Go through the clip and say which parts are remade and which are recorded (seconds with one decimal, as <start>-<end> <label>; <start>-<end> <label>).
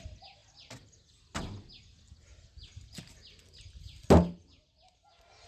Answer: 0.0-5.5 recorded